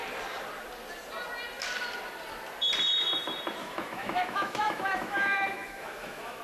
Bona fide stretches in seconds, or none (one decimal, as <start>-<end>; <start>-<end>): 0.0-3.6